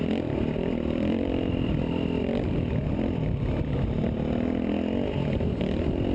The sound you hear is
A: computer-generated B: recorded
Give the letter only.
B